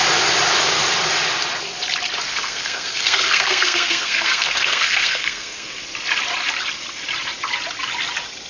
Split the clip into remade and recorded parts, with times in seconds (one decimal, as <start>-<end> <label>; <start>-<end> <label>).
0.0-2.3 recorded; 2.3-5.8 remade; 5.8-8.5 recorded